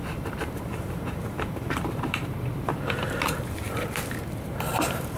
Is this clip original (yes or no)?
no